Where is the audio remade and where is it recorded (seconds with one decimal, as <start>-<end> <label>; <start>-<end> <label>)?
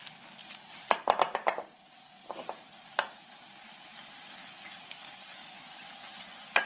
0.0-5.4 recorded; 5.4-6.7 remade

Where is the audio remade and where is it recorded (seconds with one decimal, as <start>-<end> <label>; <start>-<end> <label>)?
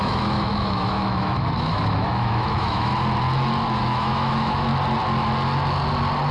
0.0-2.9 remade; 2.9-3.8 recorded; 3.8-4.7 remade; 4.7-6.3 recorded